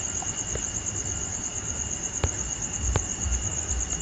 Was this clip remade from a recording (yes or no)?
no